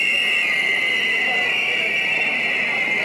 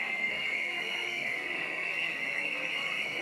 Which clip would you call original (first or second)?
first